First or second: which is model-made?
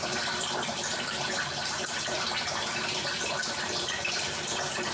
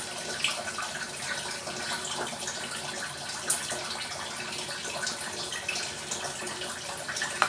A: first